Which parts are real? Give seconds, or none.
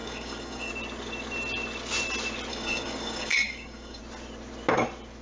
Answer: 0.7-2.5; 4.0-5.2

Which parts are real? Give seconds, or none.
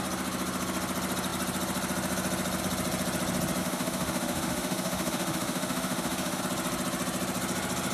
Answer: 0.0-3.6; 6.4-7.9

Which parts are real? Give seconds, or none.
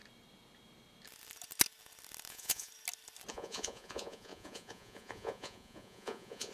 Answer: 0.0-2.3; 2.7-3.3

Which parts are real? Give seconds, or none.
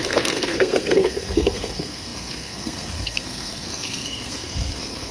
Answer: none